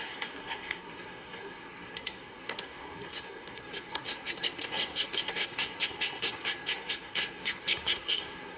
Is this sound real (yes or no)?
no